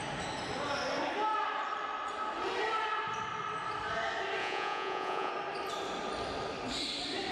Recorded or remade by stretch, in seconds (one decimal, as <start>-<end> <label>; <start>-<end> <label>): 0.0-4.4 recorded; 4.4-5.3 remade; 5.3-7.3 recorded